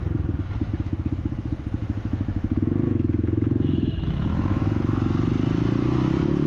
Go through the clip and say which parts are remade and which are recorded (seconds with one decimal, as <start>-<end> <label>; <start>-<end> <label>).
0.0-1.8 recorded; 1.8-4.8 remade; 4.8-6.5 recorded